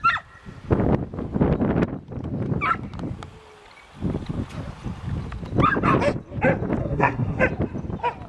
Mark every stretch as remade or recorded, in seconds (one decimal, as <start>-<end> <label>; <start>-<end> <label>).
0.0-6.8 recorded; 6.8-7.4 remade; 7.4-8.3 recorded